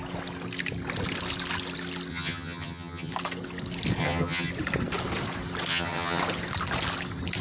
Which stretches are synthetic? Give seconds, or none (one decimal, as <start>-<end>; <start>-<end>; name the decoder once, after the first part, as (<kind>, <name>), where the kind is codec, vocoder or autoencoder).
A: 2.1-3.1 (vocoder, HiFi-GAN); 4.0-4.5; 5.7-6.2